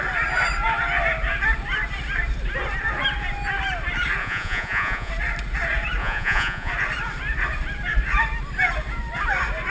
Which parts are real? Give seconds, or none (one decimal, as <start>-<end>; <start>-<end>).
0.0-4.2; 5.1-6.0; 6.7-9.7